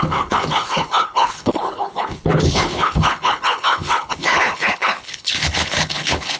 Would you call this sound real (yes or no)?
no